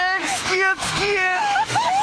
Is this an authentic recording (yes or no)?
no